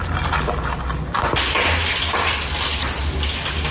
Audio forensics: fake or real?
real